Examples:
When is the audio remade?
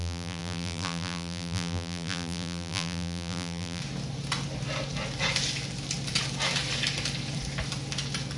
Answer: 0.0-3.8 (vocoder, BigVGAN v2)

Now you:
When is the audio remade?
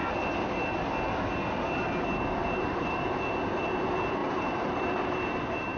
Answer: 2.4-3.1 (vocoder, BigVGAN v2); 4.2-5.8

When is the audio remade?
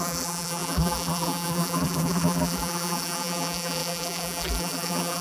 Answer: 0.0-5.2 (vocoder, BigVGAN v2)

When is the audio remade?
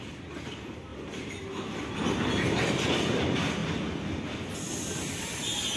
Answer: 0.9-2.8 (vocoder, BigVGAN v2)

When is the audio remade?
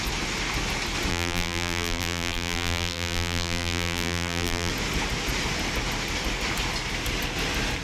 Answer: 1.1-4.7 (vocoder, BigVGAN v2)